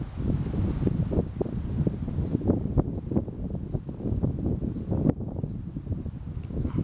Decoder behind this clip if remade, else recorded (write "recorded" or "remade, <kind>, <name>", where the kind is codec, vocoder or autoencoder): recorded